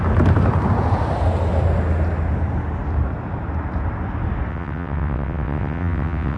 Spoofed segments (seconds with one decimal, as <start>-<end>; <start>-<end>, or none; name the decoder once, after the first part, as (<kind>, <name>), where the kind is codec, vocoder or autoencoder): 4.5-6.4 (vocoder, WaveNeXt)